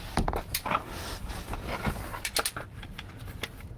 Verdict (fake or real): real